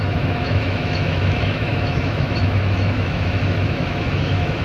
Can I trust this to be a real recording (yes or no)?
no